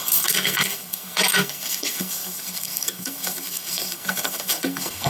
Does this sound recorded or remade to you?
remade